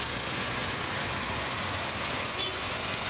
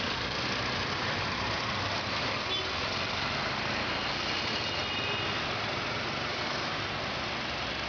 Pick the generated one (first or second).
first